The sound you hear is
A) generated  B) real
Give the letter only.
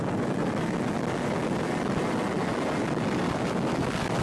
B